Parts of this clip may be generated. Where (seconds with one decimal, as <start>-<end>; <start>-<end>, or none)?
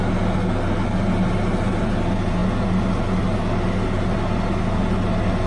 none